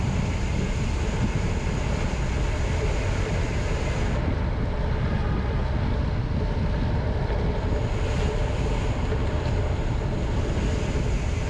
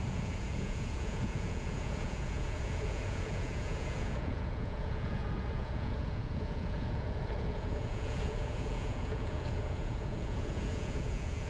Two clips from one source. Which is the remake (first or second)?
second